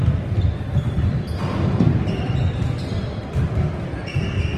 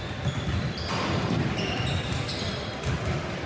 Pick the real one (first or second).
first